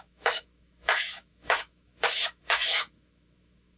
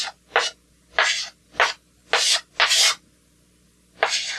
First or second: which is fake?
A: first